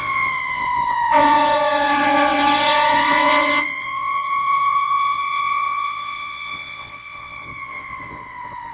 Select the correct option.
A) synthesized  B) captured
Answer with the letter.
A